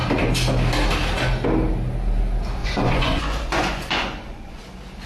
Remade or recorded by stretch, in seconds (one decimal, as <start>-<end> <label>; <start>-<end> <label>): 0.0-2.6 recorded; 2.6-4.6 remade; 4.6-5.1 recorded

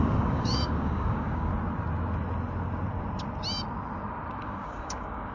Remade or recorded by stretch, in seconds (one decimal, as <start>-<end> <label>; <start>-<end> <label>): 0.0-1.5 remade; 1.5-4.4 recorded; 4.4-5.3 remade

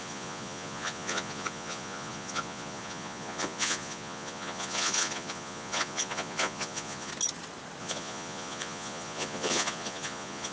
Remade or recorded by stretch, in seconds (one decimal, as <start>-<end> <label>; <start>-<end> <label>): 0.0-7.1 remade; 7.1-7.8 recorded; 7.8-10.5 remade

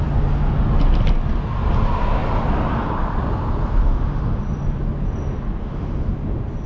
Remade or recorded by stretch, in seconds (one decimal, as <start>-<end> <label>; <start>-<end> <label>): 0.0-3.8 recorded; 3.8-4.4 remade; 4.4-5.6 recorded; 5.6-6.1 remade; 6.1-6.7 recorded

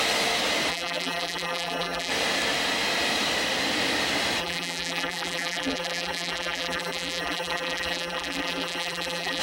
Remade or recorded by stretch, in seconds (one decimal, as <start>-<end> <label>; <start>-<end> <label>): 0.0-0.7 recorded; 0.7-2.1 remade; 2.1-4.4 recorded; 4.4-9.4 remade

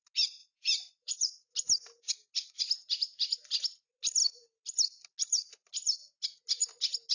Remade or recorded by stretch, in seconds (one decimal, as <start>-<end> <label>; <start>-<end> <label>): 0.0-0.4 recorded; 0.4-1.3 remade; 1.3-7.1 recorded

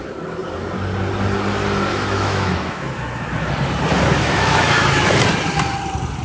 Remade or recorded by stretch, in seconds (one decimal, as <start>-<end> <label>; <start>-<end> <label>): 0.0-1.9 recorded; 1.9-3.5 remade; 3.5-4.1 recorded; 4.1-5.2 remade; 5.2-6.2 recorded